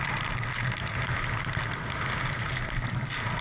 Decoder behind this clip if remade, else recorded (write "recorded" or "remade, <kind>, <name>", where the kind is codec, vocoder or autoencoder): recorded